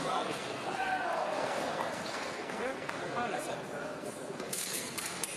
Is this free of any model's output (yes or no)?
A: no